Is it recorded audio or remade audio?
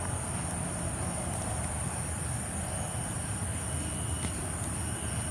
recorded